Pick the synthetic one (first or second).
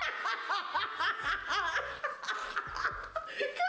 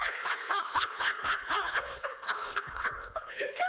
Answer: second